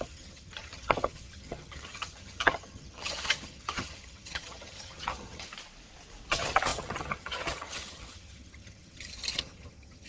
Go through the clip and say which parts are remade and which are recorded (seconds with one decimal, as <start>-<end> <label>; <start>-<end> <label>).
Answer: 0.0-5.5 remade; 5.5-6.3 recorded; 6.3-10.1 remade

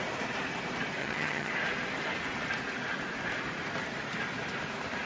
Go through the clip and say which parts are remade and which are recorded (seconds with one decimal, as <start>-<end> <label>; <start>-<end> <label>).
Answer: 0.0-1.0 recorded; 1.0-1.5 remade; 1.5-5.1 recorded

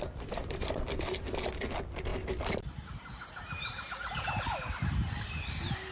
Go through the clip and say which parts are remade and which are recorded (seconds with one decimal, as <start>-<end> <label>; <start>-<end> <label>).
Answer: 0.0-5.9 recorded

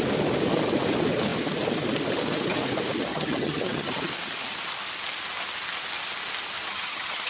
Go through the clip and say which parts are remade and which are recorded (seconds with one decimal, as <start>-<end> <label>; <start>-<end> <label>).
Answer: 0.0-3.1 recorded; 3.1-3.9 remade; 3.9-6.7 recorded; 6.7-7.3 remade

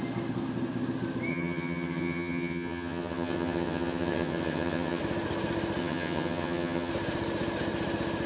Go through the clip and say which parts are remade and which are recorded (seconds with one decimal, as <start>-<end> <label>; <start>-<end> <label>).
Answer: 0.0-1.3 recorded; 1.3-5.0 remade; 5.0-5.8 recorded; 5.8-6.9 remade; 6.9-8.3 recorded